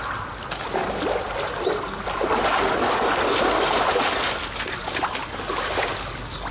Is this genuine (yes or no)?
yes